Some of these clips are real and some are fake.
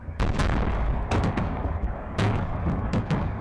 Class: fake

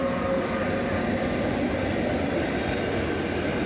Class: real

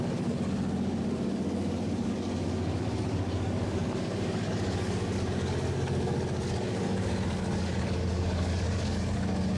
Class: fake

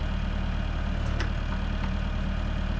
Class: real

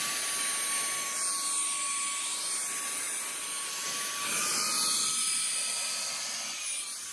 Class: real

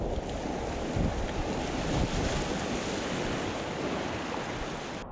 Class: real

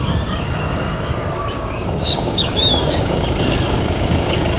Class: fake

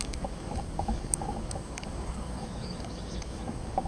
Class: fake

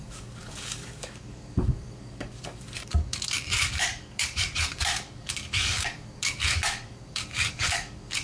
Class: fake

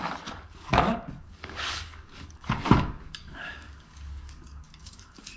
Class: fake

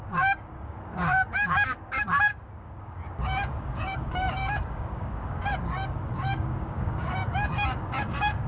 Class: fake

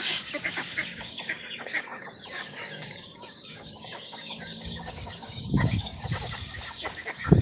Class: fake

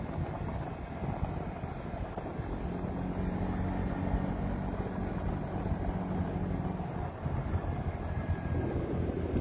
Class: real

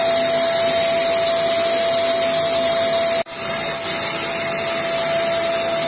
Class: real